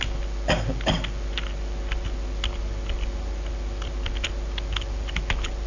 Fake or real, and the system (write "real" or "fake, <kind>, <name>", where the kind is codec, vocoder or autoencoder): real